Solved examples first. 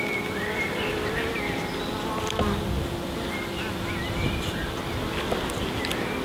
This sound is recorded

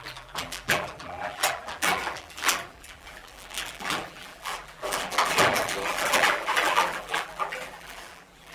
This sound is remade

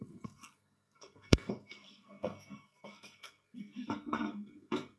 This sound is remade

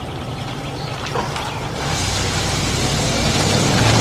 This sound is recorded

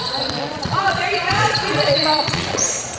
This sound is remade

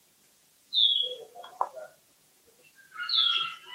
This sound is remade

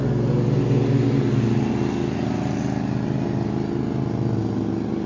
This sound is recorded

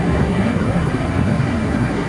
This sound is remade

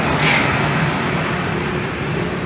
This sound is recorded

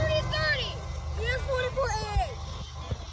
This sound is recorded